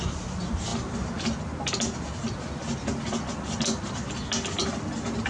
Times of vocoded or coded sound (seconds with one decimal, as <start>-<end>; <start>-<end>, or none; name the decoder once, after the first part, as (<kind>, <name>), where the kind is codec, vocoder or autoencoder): none